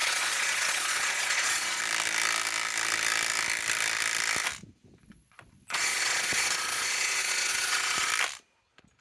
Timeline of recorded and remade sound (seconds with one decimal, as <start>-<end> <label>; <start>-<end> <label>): 0.0-1.8 remade; 1.8-5.0 recorded; 5.0-8.1 remade; 8.1-9.0 recorded